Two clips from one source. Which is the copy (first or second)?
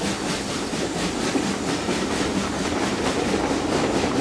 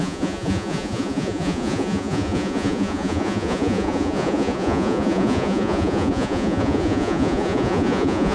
second